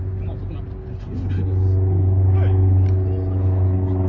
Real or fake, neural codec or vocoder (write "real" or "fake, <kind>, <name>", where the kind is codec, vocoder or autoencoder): real